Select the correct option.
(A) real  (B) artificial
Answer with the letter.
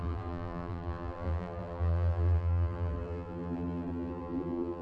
B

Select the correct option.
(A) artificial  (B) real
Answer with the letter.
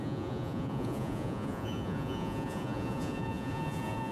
A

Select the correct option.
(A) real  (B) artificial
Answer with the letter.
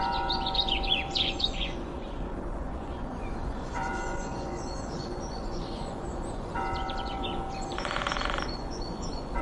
B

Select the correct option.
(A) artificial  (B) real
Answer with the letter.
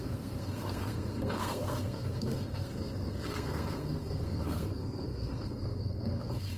A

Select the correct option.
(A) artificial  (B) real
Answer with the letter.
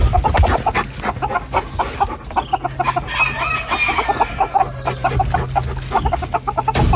B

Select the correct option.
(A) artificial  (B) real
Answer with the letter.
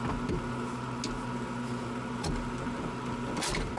B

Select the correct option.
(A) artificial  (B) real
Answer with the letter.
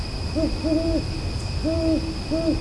B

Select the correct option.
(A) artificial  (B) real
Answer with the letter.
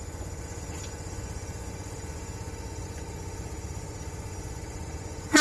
A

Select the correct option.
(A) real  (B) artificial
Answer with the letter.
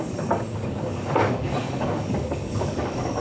B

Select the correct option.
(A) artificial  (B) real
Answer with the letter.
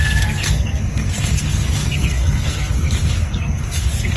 A